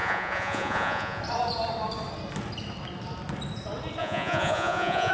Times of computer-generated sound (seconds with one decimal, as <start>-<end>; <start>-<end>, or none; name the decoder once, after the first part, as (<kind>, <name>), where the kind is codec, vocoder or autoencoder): 0.0-1.2 (vocoder, Vocos); 4.0-5.1

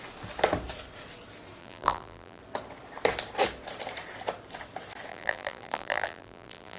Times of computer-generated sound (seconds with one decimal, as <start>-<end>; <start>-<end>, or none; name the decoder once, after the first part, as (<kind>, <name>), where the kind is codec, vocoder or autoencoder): 1.6-2.4 (vocoder, BigVGAN v2); 5.1-6.8

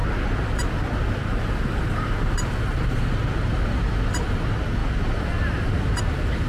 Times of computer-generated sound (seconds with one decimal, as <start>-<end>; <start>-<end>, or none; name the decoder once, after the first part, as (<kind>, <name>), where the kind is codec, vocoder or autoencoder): 2.6-4.8 (vocoder, BigVGAN v2); 6.0-6.5

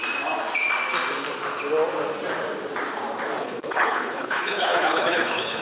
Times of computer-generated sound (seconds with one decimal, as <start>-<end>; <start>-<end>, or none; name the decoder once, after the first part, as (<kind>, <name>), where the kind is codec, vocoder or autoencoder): 3.4-5.6 (codec, HILCodec)